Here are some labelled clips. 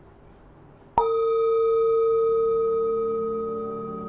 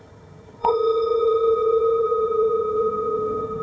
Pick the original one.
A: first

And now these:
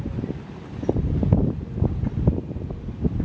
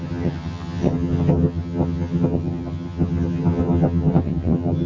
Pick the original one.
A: first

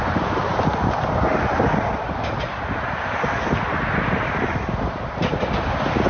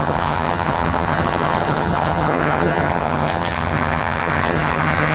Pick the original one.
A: first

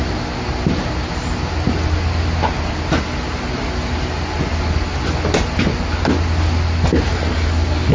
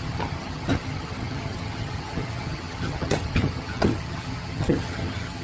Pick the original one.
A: first